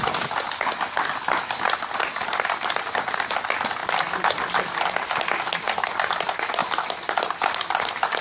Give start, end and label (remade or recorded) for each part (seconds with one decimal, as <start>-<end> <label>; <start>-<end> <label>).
0.0-8.2 recorded

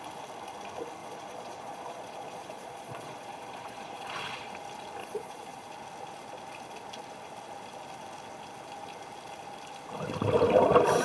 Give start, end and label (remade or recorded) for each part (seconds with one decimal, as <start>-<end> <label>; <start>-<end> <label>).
0.0-1.0 recorded; 1.0-4.5 remade; 4.5-5.0 recorded; 5.0-5.7 remade; 5.7-11.0 recorded

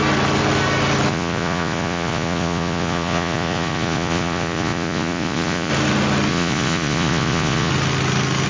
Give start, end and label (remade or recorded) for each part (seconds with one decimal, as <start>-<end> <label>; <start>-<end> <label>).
0.0-1.1 recorded; 1.1-5.7 remade; 5.7-6.3 recorded; 6.3-7.7 remade; 7.7-8.5 recorded

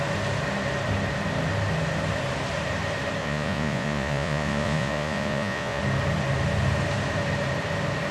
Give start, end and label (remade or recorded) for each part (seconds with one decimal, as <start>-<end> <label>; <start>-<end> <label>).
0.0-3.2 recorded; 3.2-5.8 remade; 5.8-8.1 recorded

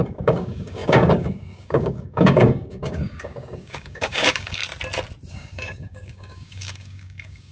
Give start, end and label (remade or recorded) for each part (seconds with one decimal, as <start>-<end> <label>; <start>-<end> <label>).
0.0-4.6 remade; 4.6-5.3 recorded; 5.3-7.5 remade

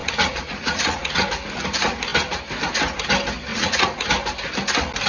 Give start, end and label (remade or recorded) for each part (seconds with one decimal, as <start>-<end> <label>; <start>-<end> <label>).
0.0-1.3 remade; 1.3-3.5 recorded; 3.5-4.1 remade; 4.1-5.1 recorded

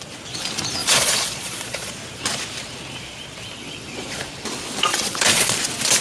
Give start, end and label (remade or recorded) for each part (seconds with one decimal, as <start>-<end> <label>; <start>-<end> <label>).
0.0-0.8 recorded; 0.8-1.9 remade; 1.9-3.5 recorded; 3.5-4.2 remade; 4.2-4.9 recorded; 4.9-5.5 remade; 5.5-6.0 recorded

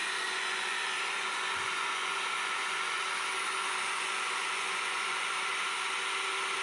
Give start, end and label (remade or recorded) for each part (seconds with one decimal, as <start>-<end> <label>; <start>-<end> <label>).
0.0-3.0 remade; 3.0-3.6 recorded; 3.6-5.3 remade; 5.3-6.6 recorded